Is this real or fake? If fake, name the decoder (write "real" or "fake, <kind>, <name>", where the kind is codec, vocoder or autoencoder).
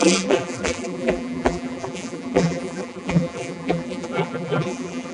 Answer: fake, vocoder, BigVGAN v2